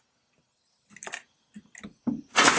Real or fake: real